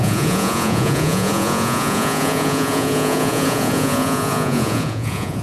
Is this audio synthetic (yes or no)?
yes